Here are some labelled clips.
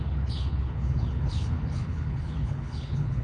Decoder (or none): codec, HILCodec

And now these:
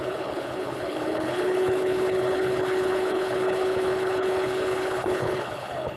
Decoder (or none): codec, HILCodec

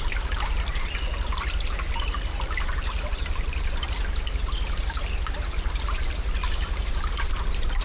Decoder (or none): none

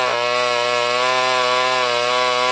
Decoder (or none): none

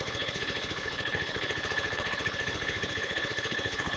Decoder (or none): codec, HILCodec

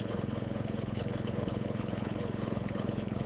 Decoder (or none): codec, HILCodec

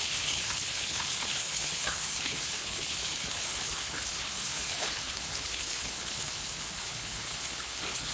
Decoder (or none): codec, HILCodec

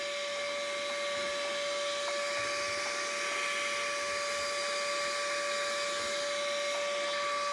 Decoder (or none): none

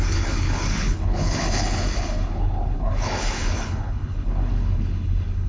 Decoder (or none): codec, HILCodec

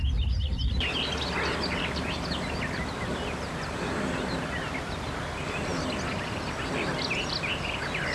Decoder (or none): none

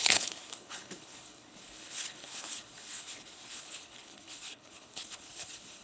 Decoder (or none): codec, HILCodec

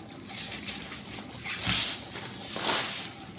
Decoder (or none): none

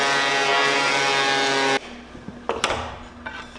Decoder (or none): none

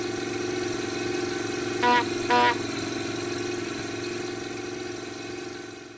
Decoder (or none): none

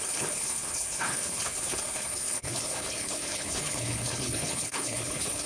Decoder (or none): codec, HILCodec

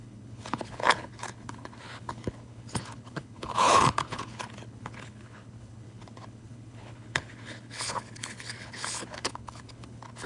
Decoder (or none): codec, HILCodec